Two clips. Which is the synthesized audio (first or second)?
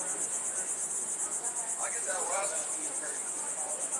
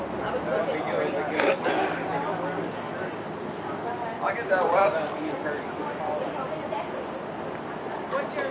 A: first